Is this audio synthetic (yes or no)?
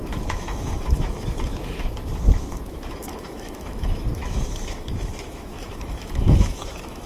yes